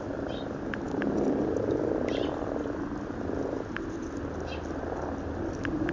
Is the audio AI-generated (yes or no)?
no